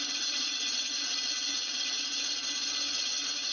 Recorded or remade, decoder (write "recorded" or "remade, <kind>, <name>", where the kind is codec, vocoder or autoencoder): recorded